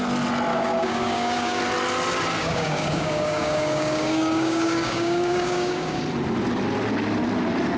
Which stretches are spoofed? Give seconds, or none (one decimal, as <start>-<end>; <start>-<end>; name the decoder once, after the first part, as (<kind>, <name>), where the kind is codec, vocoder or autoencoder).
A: 0.5-1.6 (codec, DAC); 2.4-6.0